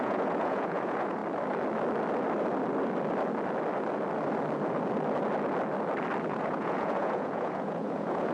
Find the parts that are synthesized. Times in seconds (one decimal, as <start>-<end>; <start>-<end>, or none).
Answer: 0.0-1.2; 6.2-8.3